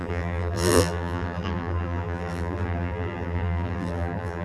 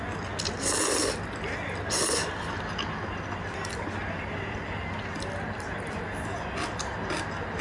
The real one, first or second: second